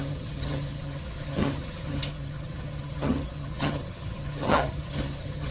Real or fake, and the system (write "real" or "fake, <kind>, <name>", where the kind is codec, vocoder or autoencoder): fake, vocoder, HiFi-GAN